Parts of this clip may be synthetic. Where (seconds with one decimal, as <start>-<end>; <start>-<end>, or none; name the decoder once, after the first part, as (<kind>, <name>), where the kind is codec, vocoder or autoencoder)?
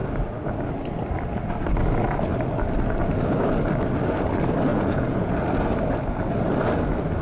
4.7-5.3 (vocoder, Vocos)